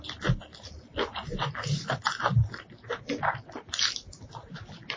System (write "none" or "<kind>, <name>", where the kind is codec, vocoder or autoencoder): none